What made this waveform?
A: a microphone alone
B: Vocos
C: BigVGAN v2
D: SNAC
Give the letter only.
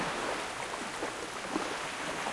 A